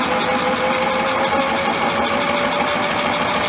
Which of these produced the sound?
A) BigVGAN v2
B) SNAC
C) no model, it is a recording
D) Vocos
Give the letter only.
C